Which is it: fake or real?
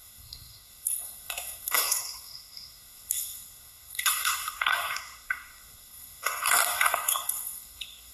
fake